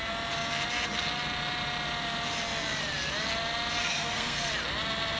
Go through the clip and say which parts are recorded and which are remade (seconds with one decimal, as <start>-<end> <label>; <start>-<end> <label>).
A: 0.0-3.8 recorded; 3.8-4.5 remade; 4.5-5.2 recorded